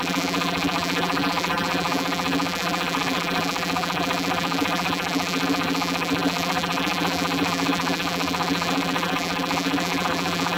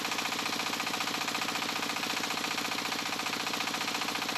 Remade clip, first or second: first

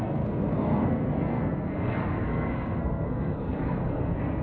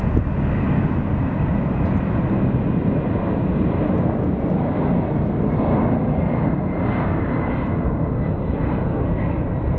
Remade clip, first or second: first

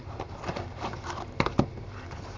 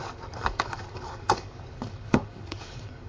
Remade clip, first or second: second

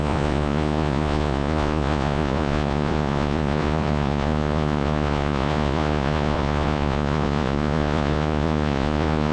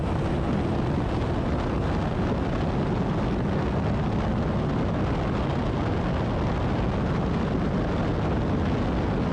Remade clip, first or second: first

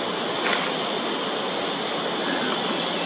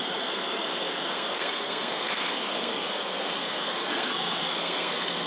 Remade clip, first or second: second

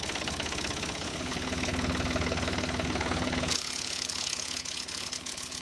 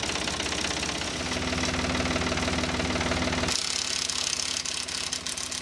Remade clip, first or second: first